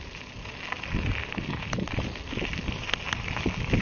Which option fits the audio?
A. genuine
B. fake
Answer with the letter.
A